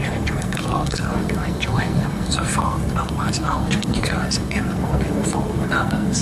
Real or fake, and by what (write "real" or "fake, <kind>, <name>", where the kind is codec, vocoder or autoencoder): fake, codec, SNAC